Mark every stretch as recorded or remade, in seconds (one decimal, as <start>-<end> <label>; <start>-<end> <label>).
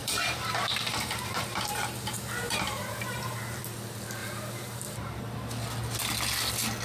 0.0-3.6 remade; 3.6-4.2 recorded; 4.2-5.2 remade; 5.2-6.8 recorded